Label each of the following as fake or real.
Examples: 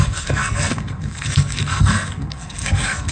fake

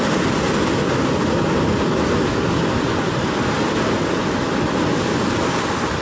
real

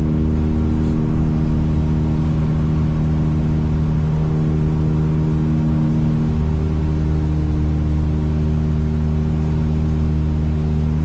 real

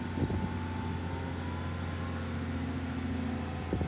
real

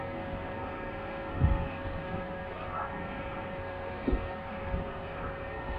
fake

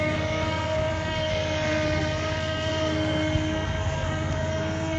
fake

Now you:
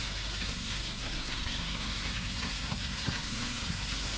fake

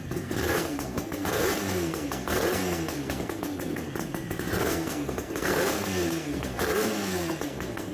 fake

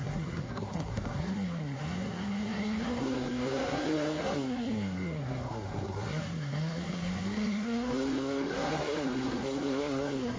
fake